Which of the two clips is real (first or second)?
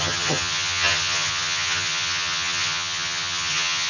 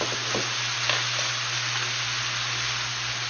second